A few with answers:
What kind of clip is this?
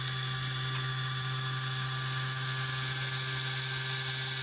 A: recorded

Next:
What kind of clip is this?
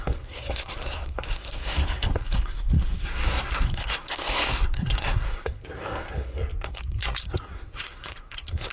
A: remade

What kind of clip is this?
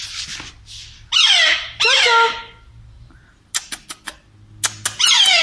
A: recorded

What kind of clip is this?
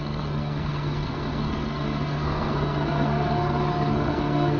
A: remade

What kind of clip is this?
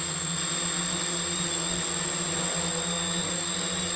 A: recorded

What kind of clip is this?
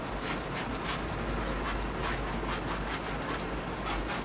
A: recorded